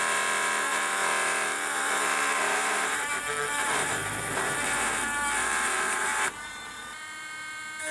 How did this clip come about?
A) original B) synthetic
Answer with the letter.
B